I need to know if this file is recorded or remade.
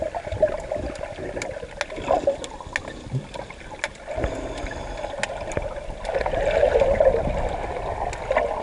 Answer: recorded